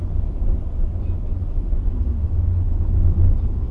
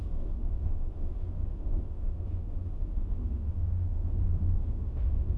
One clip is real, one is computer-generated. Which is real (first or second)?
first